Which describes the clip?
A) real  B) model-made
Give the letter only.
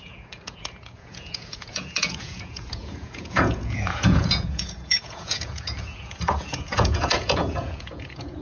B